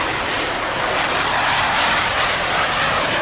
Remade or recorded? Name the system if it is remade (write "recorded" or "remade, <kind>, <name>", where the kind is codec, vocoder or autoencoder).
recorded